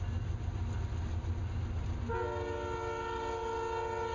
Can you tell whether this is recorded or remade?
recorded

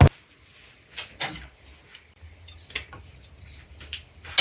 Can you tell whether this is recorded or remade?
recorded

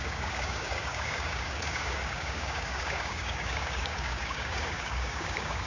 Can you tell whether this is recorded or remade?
remade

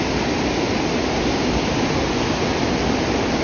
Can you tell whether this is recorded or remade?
recorded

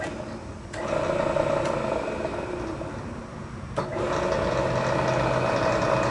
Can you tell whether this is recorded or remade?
recorded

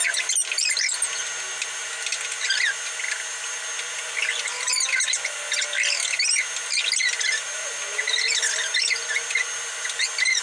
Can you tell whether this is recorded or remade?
recorded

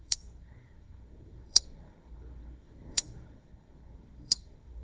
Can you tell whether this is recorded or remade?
remade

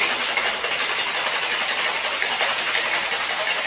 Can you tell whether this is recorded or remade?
recorded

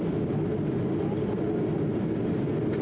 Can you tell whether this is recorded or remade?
recorded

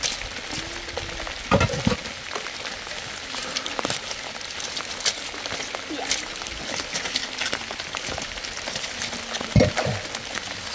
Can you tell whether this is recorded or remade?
recorded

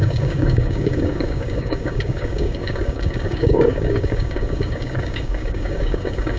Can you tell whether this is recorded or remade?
remade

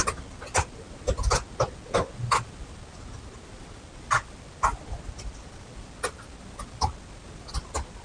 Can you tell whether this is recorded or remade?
recorded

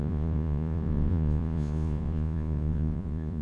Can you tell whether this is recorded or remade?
remade